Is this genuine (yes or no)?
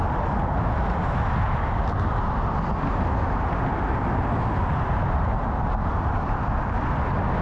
yes